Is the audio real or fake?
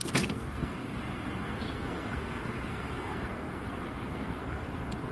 fake